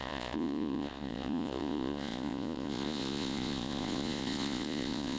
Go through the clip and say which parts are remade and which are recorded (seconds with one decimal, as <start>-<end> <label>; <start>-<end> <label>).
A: 0.0-5.2 remade